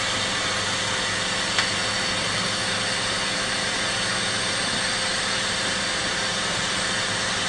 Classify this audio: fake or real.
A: real